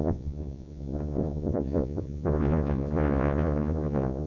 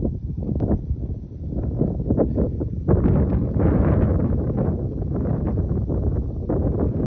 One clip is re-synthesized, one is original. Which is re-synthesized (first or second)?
first